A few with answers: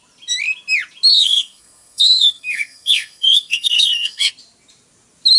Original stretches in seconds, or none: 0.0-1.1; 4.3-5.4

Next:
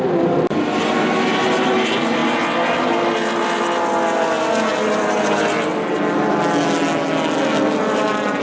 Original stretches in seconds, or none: 0.0-8.4

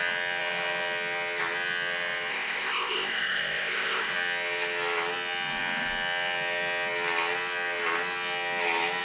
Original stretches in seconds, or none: 0.0-2.3; 4.1-9.0

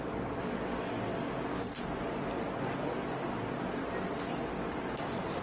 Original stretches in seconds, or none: 0.0-5.4

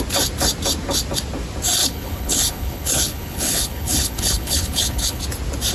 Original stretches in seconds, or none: 0.0-1.8; 5.2-5.7

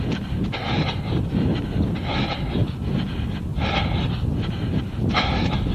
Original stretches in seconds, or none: 0.0-5.7

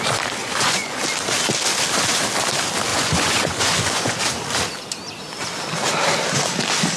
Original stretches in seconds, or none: 0.0-0.4; 1.0-2.9; 4.2-7.0